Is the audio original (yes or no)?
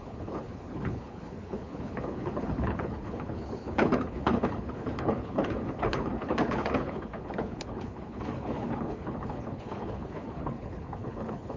no